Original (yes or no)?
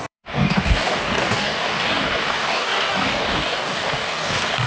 no